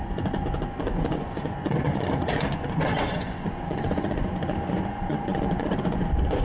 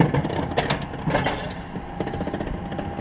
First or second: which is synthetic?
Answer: first